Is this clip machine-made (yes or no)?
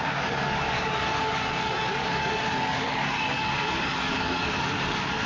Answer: yes